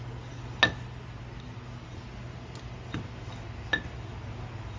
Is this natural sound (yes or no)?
yes